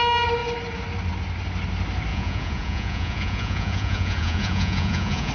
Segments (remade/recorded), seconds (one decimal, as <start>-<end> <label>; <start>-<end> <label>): 0.0-2.1 recorded; 2.1-5.3 remade